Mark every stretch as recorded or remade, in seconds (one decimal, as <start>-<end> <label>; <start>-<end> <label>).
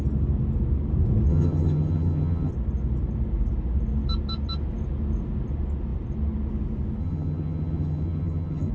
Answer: 0.0-1.3 recorded; 1.3-2.5 remade; 2.5-7.0 recorded; 7.0-8.7 remade